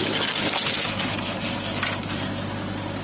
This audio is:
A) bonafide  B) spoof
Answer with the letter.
A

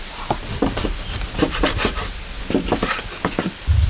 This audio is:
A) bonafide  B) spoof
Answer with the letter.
A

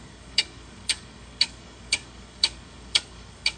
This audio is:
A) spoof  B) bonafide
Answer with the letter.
A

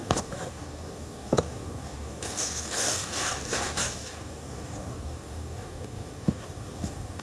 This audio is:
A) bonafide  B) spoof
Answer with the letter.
B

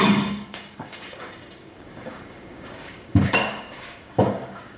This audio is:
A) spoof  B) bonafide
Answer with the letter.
A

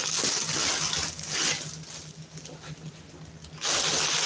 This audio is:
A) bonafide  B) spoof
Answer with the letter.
A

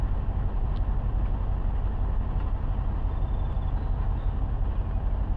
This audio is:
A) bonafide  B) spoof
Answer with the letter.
A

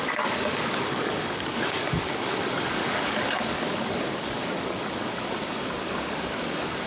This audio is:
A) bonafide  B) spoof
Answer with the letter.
B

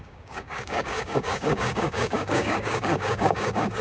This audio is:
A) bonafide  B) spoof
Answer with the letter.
B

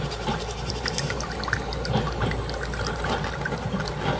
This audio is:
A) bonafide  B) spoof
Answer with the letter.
A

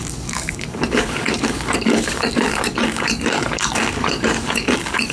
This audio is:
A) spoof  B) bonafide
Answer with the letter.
A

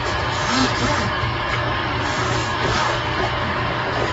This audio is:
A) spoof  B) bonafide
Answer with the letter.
A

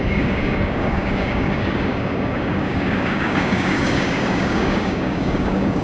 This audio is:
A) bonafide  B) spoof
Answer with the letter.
B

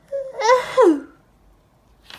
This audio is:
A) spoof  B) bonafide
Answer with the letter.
B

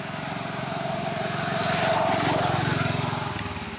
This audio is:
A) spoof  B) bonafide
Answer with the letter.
B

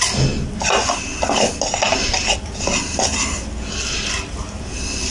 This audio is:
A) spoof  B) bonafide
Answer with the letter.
B